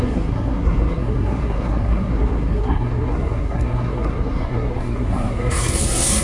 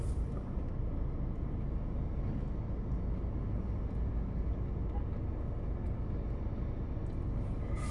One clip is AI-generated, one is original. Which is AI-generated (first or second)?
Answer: first